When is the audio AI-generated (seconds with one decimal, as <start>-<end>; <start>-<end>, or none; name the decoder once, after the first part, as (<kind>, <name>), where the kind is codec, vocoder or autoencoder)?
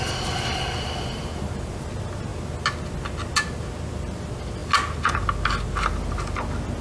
none